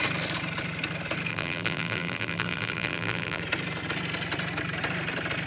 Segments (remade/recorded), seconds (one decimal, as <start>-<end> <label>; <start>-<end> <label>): 0.0-1.3 recorded; 1.3-3.4 remade; 3.4-5.5 recorded

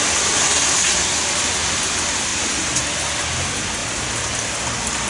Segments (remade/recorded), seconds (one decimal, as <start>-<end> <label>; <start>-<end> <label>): 0.0-2.3 recorded; 2.3-2.8 remade; 2.8-3.8 recorded; 3.8-4.5 remade; 4.5-5.1 recorded

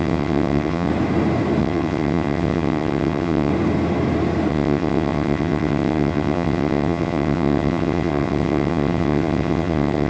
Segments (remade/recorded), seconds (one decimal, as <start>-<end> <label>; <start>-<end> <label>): 0.0-0.9 remade; 0.9-1.6 recorded; 1.6-3.5 remade; 3.5-4.5 recorded; 4.5-10.1 remade

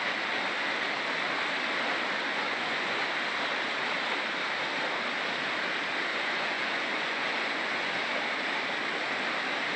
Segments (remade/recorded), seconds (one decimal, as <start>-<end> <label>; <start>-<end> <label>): 0.0-2.3 recorded; 2.3-3.1 remade; 3.1-6.1 recorded; 6.1-7.9 remade; 7.9-9.8 recorded

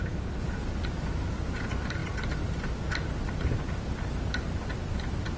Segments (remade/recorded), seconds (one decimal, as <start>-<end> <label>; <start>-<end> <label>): 0.0-5.4 recorded

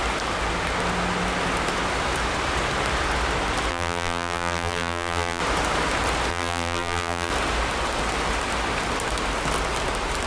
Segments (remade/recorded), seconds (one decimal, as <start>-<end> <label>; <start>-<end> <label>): 0.0-3.7 recorded; 3.7-5.4 remade; 5.4-6.3 recorded; 6.3-7.3 remade; 7.3-10.3 recorded